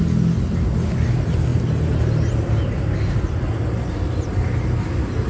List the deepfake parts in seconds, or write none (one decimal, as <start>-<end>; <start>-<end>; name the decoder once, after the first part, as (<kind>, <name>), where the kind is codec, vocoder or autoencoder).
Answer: none